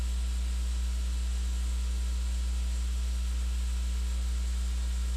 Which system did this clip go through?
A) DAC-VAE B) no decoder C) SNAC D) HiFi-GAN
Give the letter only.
B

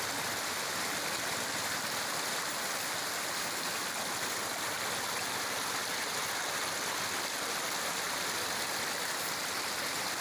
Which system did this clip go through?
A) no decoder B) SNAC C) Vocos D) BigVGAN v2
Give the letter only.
A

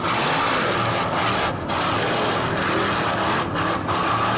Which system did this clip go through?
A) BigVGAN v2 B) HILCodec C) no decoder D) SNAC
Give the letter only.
C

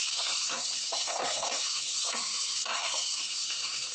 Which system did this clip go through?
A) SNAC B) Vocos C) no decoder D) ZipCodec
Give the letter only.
A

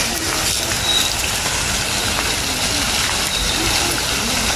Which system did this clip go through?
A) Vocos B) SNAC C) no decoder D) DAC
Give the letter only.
C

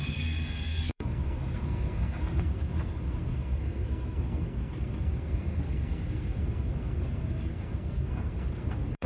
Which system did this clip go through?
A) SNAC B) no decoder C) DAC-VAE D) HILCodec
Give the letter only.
A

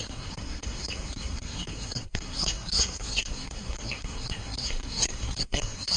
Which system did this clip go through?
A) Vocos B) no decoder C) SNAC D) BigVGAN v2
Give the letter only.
C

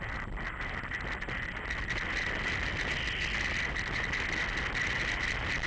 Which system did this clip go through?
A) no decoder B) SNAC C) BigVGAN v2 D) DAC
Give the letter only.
A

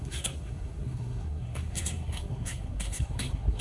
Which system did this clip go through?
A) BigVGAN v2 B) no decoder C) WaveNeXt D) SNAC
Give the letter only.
D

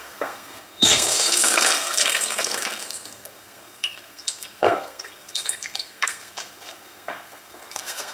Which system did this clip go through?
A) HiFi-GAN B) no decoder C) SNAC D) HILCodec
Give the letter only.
C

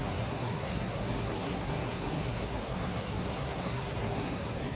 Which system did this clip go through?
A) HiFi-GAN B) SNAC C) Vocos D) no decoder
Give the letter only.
B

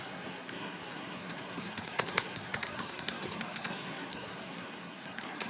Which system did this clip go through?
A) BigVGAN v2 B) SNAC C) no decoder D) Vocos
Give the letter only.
B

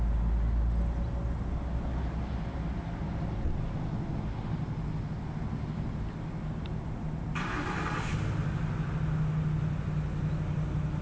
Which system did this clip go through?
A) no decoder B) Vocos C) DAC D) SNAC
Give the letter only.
A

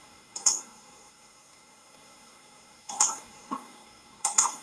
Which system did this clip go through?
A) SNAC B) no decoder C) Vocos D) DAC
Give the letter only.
A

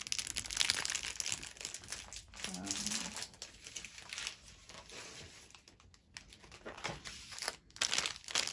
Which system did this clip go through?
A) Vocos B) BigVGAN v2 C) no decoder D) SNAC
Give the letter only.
C